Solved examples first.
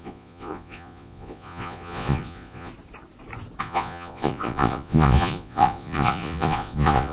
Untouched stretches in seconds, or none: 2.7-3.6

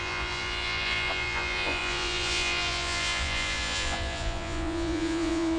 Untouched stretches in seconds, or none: none

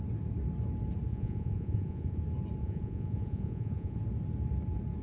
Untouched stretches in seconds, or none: 0.0-1.1; 2.2-2.6; 4.0-5.0

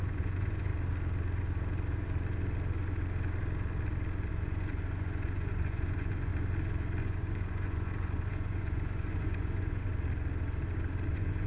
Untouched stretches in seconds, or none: 0.7-4.3; 6.3-7.0; 9.9-11.1

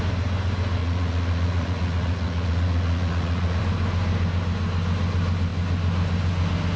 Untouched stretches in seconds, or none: 0.0-0.8; 3.6-6.8

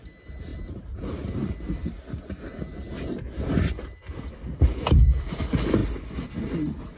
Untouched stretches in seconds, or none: 0.0-7.0

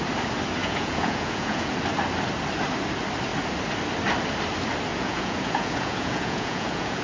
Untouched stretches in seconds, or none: 0.0-0.6; 1.7-4.9